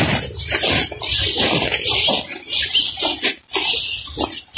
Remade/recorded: recorded